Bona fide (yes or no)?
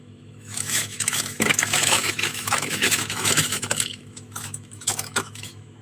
no